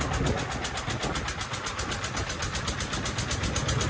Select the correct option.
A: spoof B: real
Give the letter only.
B